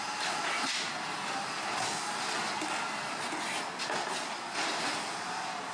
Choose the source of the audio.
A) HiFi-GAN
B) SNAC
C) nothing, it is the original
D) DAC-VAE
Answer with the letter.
C